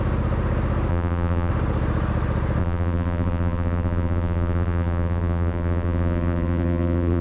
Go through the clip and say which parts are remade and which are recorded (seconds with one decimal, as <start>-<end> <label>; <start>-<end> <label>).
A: 0.0-0.9 recorded; 0.9-1.5 remade; 1.5-2.6 recorded; 2.6-7.2 remade